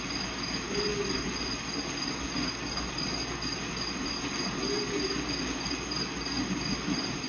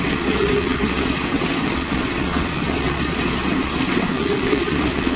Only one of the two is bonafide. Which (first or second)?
first